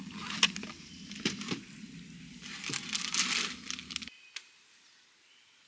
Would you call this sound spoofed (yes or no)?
no